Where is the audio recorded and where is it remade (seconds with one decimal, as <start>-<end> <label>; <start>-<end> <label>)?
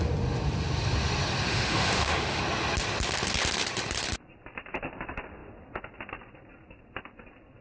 0.0-1.5 recorded; 1.5-2.4 remade; 2.4-7.6 recorded